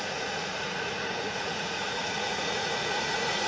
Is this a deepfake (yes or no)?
yes